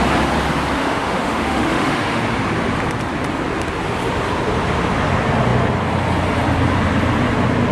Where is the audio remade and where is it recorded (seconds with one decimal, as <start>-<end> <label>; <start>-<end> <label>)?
0.0-0.8 recorded; 0.8-2.2 remade; 2.2-7.7 recorded